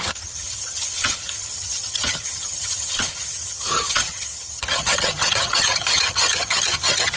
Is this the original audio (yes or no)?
no